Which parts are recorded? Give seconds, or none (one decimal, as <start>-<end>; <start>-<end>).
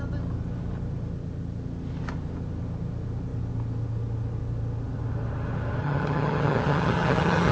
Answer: 0.0-5.8